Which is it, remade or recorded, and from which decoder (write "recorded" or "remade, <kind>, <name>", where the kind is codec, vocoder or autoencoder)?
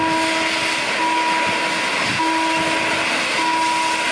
recorded